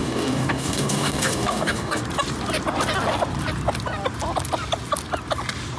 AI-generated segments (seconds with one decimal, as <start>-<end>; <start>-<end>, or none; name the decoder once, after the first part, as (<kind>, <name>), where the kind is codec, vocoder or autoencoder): 0.0-2.0 (codec, DAC)